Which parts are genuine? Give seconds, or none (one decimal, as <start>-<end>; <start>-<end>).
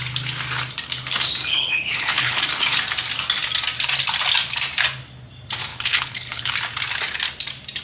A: 0.0-1.5; 2.4-5.7; 6.5-7.8